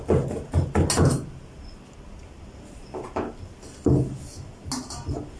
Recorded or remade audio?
recorded